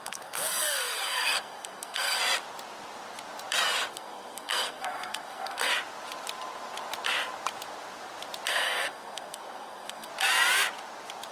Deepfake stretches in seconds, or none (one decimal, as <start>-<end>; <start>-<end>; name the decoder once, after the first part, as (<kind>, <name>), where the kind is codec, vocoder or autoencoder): 0.0-2.2 (codec, SNAC); 3.9-5.7; 8.5-10.1